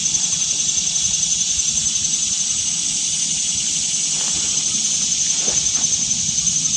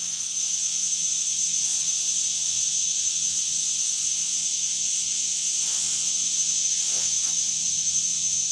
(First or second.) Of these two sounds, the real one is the first